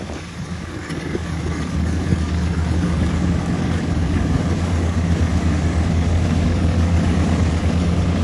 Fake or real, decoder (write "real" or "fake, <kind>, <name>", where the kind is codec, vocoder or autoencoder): fake, codec, DAC